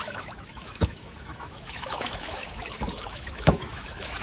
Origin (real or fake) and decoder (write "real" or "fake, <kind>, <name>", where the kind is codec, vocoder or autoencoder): fake, autoencoder, DAC-VAE